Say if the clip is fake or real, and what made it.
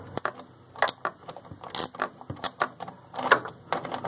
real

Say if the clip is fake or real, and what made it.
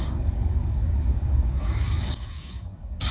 fake, codec, DAC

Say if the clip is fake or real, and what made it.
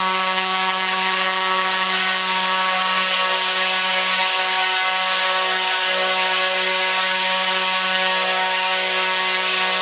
fake, codec, DAC